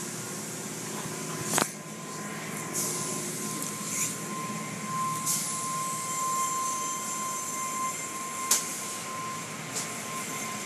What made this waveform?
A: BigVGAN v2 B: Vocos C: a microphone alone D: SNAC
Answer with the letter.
C